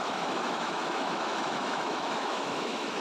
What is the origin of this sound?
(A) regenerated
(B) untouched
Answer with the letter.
A